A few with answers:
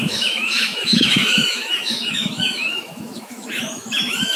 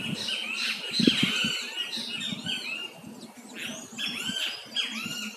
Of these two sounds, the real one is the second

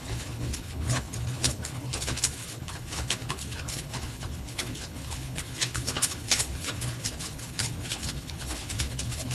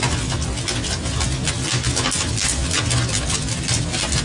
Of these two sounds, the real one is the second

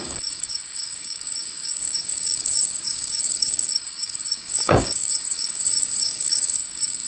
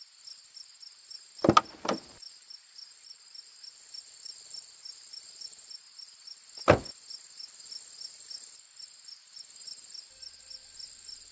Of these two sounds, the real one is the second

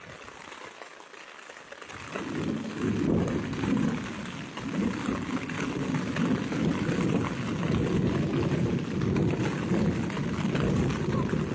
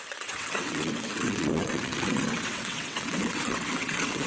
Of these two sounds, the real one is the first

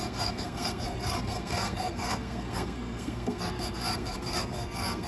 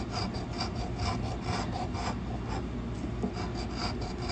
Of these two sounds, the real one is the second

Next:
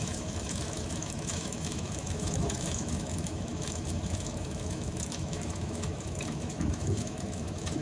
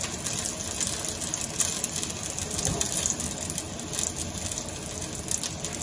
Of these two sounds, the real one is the second